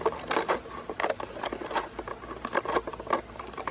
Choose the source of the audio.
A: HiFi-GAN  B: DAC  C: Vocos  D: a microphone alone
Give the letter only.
D